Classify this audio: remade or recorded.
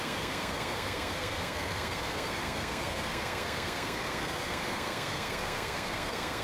remade